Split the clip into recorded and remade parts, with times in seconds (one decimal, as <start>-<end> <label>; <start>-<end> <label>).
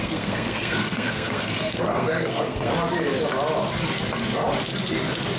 0.0-2.7 remade; 2.7-5.4 recorded